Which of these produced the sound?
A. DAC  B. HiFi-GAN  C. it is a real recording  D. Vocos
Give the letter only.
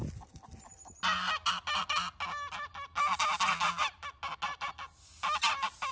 C